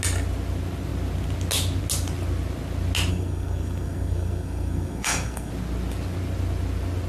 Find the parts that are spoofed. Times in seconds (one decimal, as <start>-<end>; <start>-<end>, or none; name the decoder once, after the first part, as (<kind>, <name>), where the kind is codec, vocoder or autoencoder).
3.1-5.5 (codec, SNAC)